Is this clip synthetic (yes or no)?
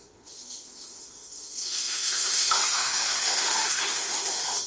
yes